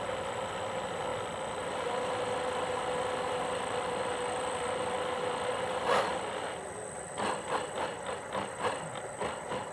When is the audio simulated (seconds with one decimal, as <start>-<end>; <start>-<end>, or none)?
none